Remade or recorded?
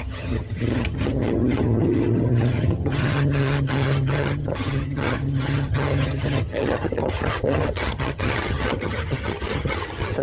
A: remade